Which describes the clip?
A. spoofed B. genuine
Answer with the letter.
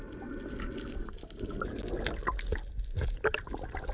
B